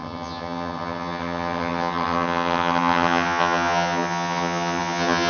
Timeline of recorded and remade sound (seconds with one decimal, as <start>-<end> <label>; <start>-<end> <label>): 0.0-5.3 remade